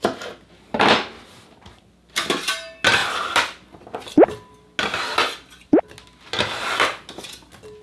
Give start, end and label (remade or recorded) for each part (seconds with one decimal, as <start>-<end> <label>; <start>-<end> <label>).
0.0-7.8 recorded